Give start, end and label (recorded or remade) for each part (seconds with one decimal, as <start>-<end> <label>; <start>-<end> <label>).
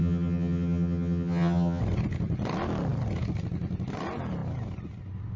0.0-1.8 remade; 1.8-5.4 recorded